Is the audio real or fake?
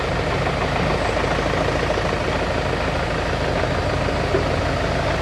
real